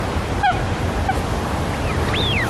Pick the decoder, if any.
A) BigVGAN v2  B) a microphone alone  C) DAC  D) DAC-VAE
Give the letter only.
B